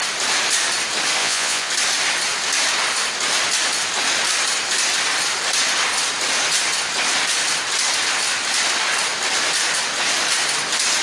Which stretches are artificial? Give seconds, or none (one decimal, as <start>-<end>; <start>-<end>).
1.2-1.7